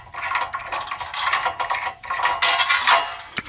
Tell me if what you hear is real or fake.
real